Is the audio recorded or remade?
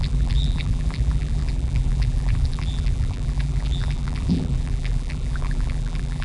remade